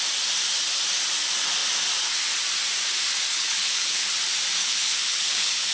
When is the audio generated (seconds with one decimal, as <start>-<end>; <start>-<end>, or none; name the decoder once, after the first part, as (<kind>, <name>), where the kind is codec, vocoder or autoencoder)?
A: 3.3-4.1 (codec, HILCodec); 4.6-5.7